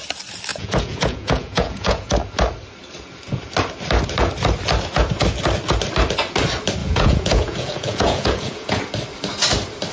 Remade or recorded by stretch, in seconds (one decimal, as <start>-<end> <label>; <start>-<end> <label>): 0.0-0.5 recorded; 0.5-2.1 remade; 2.1-6.8 recorded; 6.8-8.8 remade; 8.8-9.9 recorded